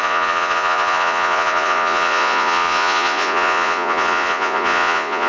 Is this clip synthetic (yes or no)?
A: yes